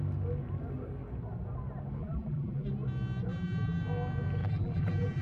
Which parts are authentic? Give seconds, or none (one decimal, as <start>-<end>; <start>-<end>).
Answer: 0.0-2.0; 2.7-3.3; 3.8-4.4